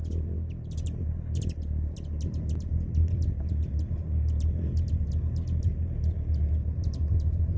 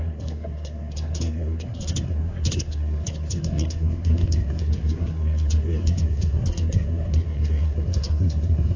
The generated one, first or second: second